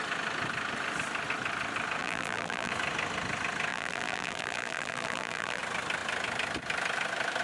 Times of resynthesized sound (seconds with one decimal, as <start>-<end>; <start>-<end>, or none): 2.0-2.7; 3.7-5.6